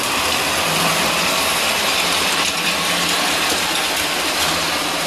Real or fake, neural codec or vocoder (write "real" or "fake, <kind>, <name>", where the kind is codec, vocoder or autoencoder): real